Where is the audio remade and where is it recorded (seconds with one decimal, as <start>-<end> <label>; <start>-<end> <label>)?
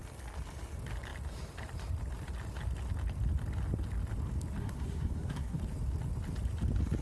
0.0-4.6 recorded; 4.6-5.6 remade; 5.6-7.0 recorded